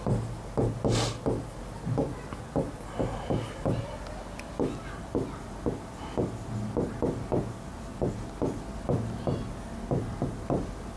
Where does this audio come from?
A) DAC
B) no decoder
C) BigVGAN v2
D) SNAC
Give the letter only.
B